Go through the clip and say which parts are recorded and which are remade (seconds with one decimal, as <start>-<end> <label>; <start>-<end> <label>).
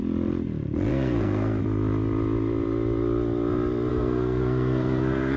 0.0-0.9 recorded; 0.9-1.6 remade; 1.6-3.9 recorded; 3.9-5.4 remade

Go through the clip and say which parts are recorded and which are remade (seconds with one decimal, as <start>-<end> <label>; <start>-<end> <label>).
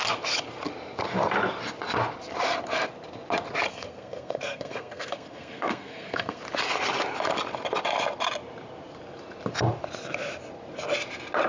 0.0-3.7 recorded; 3.7-6.4 remade; 6.4-11.5 recorded